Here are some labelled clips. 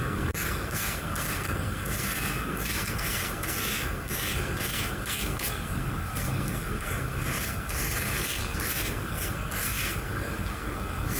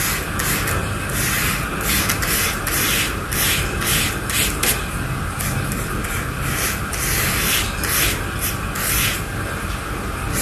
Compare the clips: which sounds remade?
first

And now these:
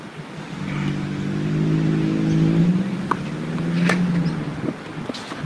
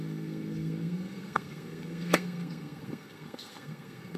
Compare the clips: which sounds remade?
second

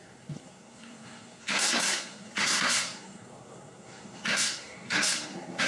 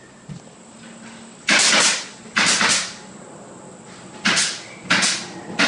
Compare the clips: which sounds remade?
first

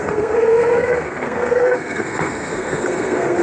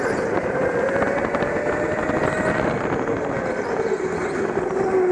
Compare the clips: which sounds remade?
first